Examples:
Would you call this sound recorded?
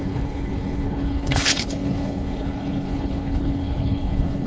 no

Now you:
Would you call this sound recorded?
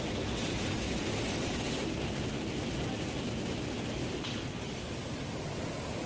yes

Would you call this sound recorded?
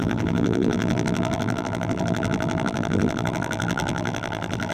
no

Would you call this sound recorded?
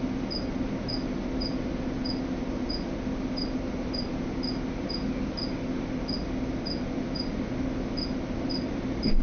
yes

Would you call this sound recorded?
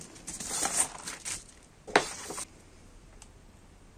yes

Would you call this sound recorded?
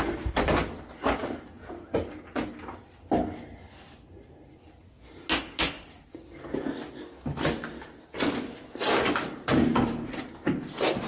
yes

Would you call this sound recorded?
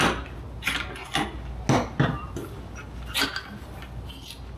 yes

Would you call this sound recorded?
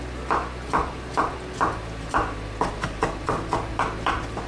yes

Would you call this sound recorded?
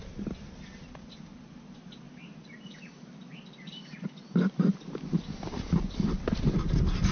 yes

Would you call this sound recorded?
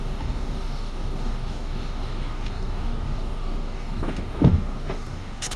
no